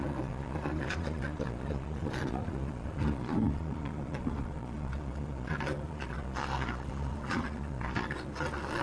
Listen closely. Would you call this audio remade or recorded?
remade